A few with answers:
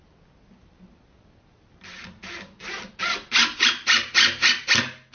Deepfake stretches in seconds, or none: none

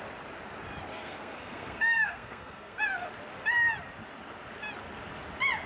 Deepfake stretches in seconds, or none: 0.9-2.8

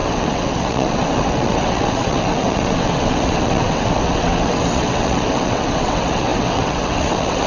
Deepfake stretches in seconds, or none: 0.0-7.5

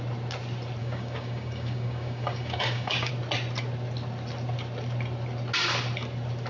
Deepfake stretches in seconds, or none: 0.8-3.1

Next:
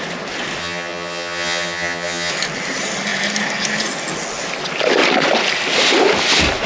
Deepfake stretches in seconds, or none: 0.6-2.3

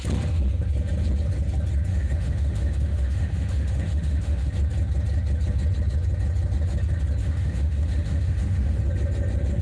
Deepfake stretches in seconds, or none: 1.9-4.5; 7.2-8.8

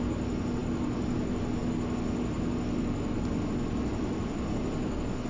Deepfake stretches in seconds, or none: none

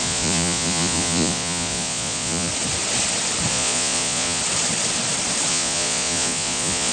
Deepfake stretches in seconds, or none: 0.0-2.5; 3.5-4.4; 5.5-6.9